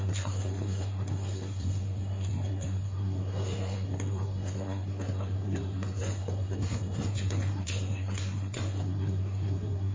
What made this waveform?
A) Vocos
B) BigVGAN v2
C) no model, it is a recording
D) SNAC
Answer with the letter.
D